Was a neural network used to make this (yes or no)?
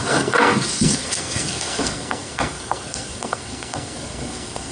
yes